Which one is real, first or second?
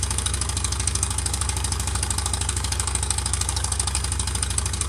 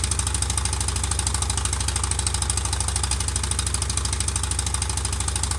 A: second